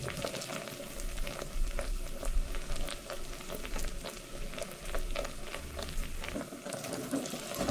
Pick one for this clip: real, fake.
real